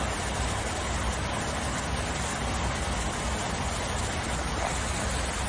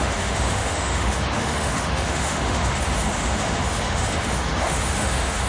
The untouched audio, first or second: first